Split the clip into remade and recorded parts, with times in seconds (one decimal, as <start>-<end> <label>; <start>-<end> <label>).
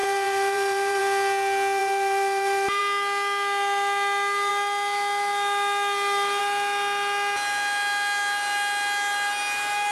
0.0-1.0 remade; 1.0-1.8 recorded; 1.8-2.8 remade; 2.8-9.9 recorded